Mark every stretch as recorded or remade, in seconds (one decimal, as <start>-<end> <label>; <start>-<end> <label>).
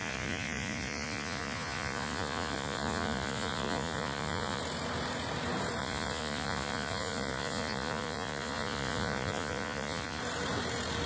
0.0-4.6 remade; 4.6-5.8 recorded; 5.8-10.2 remade; 10.2-11.1 recorded